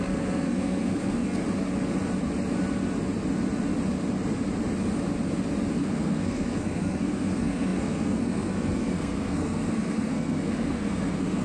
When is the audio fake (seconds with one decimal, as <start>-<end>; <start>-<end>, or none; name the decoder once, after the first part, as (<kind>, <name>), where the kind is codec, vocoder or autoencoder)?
0.0-1.4 (codec, SNAC); 5.7-11.4